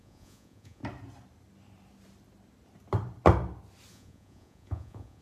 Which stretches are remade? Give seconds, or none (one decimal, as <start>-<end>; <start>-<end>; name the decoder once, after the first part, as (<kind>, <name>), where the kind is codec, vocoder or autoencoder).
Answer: 0.0-0.8 (vocoder, Vocos); 3.9-5.2